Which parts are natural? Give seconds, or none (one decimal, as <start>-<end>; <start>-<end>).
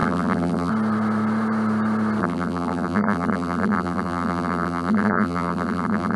0.7-2.2